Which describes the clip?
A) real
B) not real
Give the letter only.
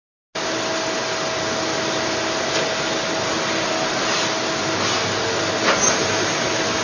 A